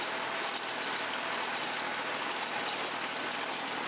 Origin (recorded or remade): recorded